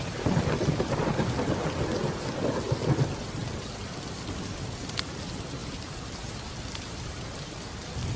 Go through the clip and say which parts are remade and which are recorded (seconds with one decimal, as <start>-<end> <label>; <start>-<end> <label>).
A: 0.0-8.2 recorded